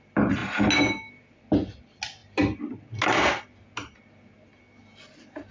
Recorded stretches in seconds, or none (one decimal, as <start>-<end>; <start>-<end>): 0.0-5.5